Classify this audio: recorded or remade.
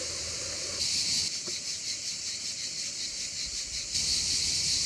recorded